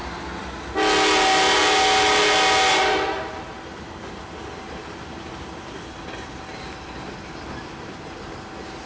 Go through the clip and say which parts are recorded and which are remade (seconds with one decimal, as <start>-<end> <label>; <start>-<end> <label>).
0.0-8.9 recorded